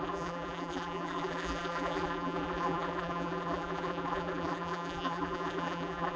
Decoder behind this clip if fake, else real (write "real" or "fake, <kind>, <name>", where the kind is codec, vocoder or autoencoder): fake, vocoder, BigVGAN v2